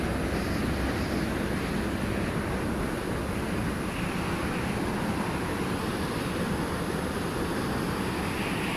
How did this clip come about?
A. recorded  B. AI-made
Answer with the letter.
A